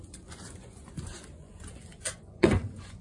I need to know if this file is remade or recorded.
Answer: remade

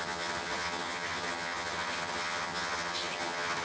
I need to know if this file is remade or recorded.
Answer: remade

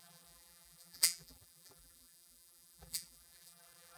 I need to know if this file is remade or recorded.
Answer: remade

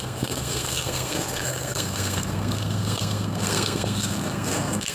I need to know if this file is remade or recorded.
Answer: remade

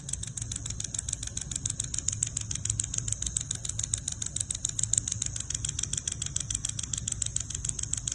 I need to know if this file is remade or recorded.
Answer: recorded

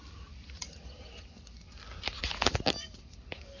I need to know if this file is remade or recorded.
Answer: recorded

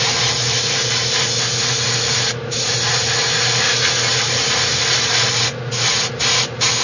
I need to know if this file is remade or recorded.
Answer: recorded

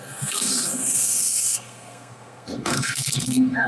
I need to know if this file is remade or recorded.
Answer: remade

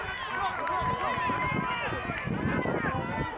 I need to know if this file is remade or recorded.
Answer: recorded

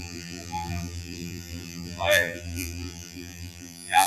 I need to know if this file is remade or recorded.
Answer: remade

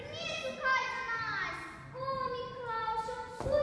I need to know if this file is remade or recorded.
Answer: recorded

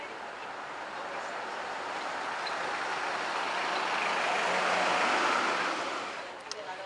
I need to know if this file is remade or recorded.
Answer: recorded